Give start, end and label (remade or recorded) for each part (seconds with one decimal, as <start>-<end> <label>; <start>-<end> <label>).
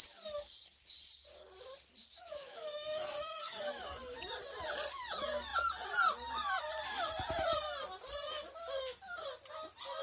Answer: 0.0-2.4 recorded; 2.4-4.2 remade; 4.2-10.0 recorded